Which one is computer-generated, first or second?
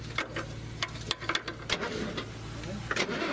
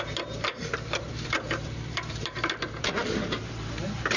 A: second